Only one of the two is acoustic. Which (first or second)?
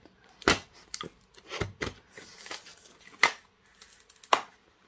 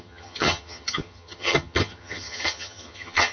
first